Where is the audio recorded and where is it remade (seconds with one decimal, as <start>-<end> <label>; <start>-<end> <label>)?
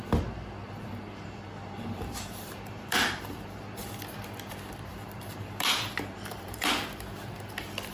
0.0-0.6 recorded; 0.6-3.9 remade; 3.9-4.9 recorded; 4.9-6.7 remade; 6.7-7.9 recorded